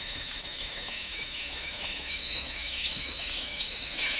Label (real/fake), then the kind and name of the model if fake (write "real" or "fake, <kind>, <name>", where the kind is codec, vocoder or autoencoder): fake, autoencoder, DAC-VAE